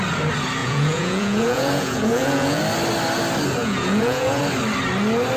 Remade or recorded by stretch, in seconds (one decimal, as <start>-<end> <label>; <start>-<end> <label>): 0.0-0.6 recorded; 0.6-2.6 remade; 2.6-3.6 recorded; 3.6-4.4 remade; 4.4-5.4 recorded